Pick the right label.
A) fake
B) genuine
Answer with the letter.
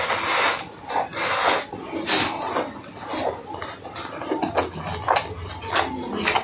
B